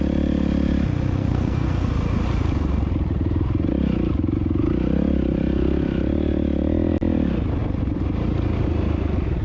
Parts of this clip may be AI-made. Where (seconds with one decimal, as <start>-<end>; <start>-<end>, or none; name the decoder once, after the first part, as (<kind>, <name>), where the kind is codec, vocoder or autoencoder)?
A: 1.2-1.9 (codec, SNAC)